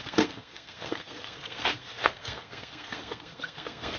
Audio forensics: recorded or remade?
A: remade